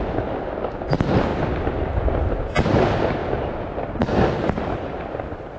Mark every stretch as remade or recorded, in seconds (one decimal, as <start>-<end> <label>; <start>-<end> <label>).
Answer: 0.0-5.6 recorded